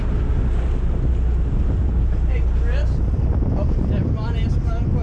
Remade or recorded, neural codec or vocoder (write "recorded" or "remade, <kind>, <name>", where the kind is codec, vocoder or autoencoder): recorded